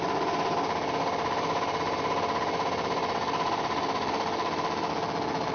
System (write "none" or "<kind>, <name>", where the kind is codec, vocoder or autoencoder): none